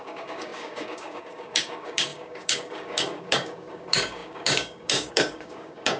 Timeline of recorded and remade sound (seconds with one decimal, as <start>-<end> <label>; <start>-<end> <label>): 0.0-6.0 remade